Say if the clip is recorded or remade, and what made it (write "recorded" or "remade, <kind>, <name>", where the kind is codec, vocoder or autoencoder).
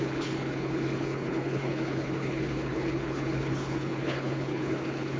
remade, codec, HILCodec